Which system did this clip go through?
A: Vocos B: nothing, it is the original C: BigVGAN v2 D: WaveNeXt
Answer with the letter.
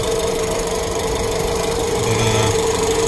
C